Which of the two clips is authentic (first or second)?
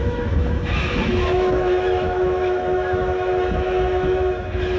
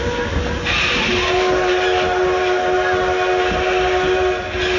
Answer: second